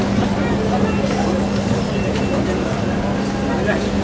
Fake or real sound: real